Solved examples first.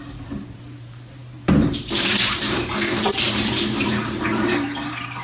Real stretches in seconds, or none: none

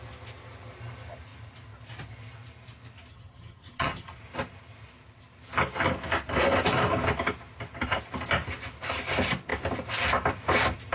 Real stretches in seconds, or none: 0.0-3.1; 4.2-10.9